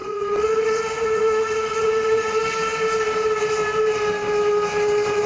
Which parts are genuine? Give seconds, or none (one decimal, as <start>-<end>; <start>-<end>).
2.4-5.3